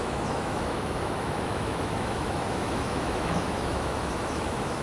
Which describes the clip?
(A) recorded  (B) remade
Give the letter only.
B